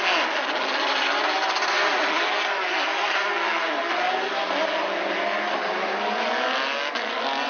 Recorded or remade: recorded